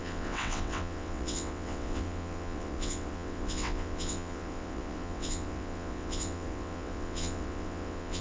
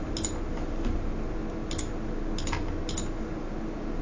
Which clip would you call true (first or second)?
second